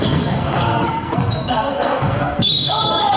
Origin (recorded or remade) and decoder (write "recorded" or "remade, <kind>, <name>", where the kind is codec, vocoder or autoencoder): remade, codec, SNAC